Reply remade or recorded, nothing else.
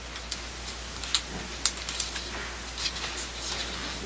recorded